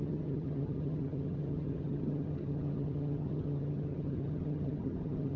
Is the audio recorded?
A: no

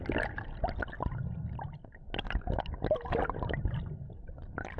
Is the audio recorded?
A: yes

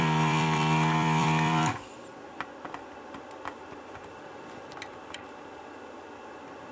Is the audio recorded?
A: no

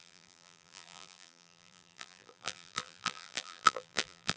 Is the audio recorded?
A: no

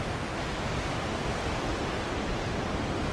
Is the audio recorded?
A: yes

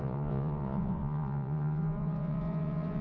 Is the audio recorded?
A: no